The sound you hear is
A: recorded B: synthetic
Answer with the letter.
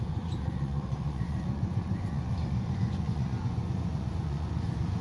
B